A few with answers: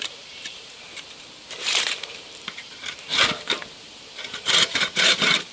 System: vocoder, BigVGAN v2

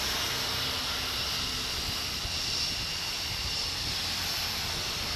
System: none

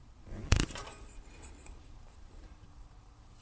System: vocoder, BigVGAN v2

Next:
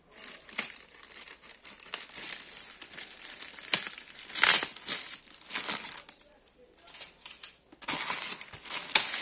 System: none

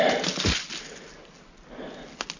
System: none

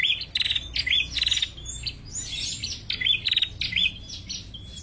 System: none